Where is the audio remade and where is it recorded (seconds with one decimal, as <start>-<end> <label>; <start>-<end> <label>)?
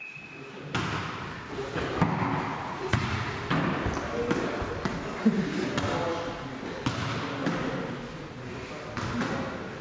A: 0.0-2.5 recorded; 2.5-3.4 remade; 3.4-9.8 recorded